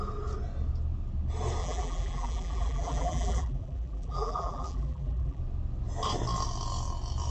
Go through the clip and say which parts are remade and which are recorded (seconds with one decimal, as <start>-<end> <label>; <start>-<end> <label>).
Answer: 0.0-1.6 recorded; 1.6-5.4 remade; 5.4-7.3 recorded